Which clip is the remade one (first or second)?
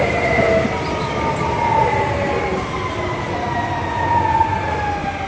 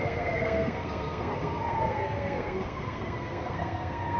second